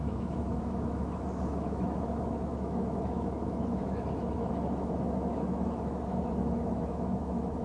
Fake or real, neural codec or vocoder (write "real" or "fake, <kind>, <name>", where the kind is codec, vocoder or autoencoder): fake, autoencoder, DAC-VAE